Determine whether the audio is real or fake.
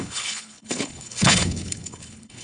fake